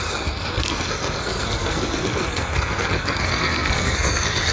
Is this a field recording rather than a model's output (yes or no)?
no